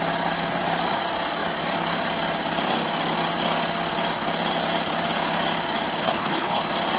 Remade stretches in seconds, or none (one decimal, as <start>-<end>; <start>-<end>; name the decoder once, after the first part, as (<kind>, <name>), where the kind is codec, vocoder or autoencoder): 6.0-6.6 (codec, HILCodec)